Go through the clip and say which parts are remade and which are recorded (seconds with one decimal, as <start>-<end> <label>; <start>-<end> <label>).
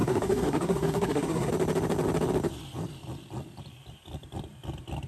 0.0-1.5 remade; 1.5-5.1 recorded